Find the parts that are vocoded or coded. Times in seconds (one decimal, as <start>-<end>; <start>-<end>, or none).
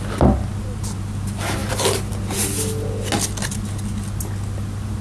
none